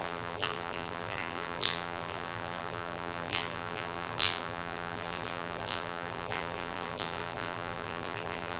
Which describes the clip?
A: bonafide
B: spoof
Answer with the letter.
B